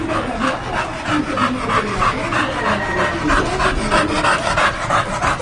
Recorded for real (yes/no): yes